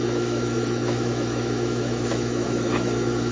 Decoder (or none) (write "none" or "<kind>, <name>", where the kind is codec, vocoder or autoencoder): autoencoder, DAC-VAE